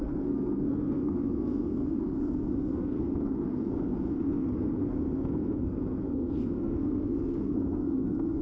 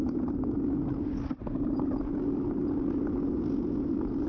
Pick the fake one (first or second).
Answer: first